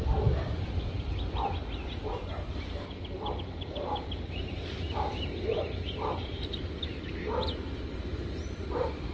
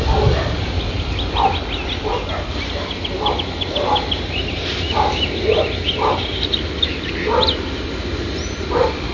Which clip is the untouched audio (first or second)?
second